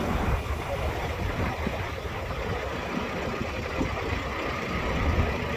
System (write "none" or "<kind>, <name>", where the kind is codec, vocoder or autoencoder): none